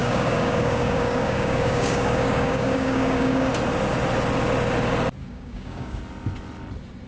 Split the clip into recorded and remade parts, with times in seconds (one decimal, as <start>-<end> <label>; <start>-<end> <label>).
0.0-3.5 remade; 3.5-5.2 recorded; 5.2-6.0 remade; 6.0-7.1 recorded